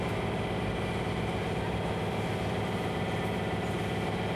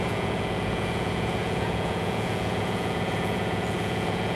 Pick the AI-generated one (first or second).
second